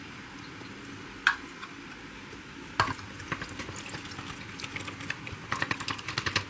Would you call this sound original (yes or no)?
yes